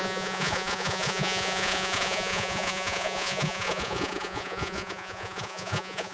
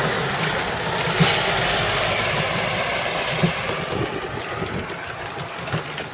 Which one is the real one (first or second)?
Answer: second